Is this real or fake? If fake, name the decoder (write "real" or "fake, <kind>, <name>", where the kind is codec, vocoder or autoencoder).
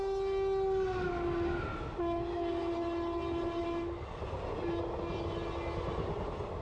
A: real